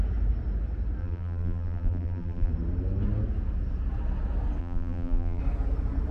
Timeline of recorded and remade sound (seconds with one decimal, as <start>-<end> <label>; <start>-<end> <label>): 0.0-1.0 recorded; 1.0-2.5 remade; 2.5-4.6 recorded; 4.6-5.4 remade; 5.4-6.1 recorded